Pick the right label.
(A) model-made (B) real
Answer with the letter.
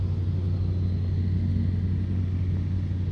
B